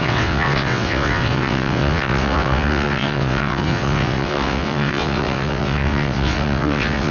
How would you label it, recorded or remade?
remade